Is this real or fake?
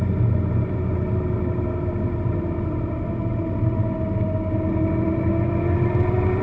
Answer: real